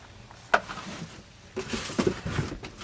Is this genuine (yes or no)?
yes